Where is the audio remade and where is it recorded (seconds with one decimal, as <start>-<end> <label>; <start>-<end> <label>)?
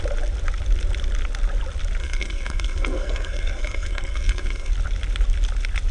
0.0-2.0 recorded; 2.0-4.7 remade; 4.7-5.9 recorded